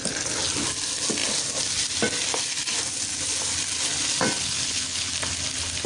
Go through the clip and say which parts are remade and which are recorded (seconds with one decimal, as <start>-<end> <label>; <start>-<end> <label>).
0.0-4.4 recorded; 4.4-5.1 remade; 5.1-5.9 recorded